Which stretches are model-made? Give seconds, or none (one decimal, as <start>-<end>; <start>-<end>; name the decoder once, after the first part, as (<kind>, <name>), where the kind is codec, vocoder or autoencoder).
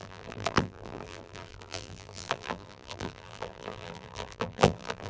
0.0-5.1 (vocoder, BigVGAN v2)